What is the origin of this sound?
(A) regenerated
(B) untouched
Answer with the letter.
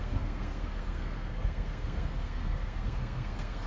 A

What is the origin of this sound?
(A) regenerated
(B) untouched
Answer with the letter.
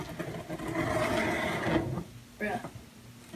B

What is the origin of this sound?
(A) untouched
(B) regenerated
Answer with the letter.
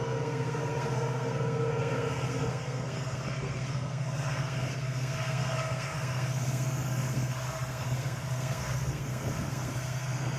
B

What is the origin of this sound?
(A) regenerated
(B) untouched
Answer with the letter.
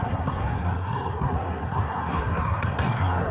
A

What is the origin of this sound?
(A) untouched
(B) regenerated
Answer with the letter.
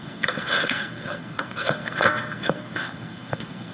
B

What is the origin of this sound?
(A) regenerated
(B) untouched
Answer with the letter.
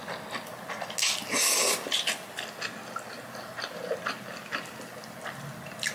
B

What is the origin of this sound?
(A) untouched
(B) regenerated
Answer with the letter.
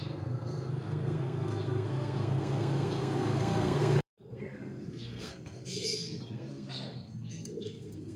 B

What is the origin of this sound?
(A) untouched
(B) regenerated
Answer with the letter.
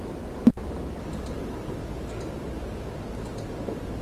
A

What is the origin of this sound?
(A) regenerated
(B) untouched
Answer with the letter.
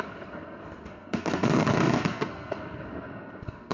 A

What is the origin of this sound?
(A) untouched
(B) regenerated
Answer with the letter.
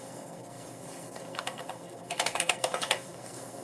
B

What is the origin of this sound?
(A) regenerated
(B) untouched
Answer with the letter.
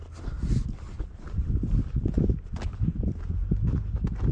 B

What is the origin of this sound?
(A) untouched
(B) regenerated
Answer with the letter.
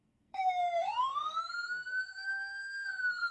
B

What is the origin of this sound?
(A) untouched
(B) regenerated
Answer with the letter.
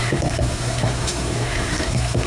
B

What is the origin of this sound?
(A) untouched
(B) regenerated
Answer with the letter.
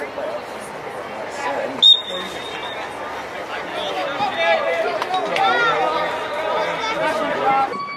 A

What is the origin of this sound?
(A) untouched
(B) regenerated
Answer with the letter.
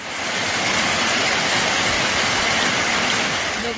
A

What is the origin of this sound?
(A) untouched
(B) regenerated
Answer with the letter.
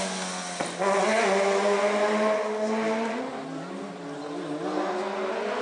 A